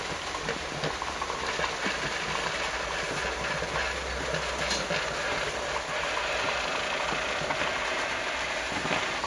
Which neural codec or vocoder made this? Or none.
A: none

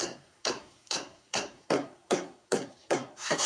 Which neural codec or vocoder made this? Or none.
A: codec, SNAC